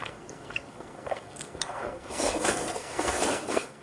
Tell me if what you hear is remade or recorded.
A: remade